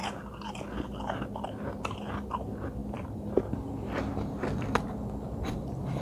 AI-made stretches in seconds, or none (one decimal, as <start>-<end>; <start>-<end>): 2.8-6.0